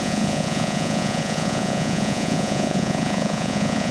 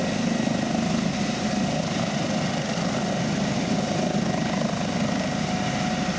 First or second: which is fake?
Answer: first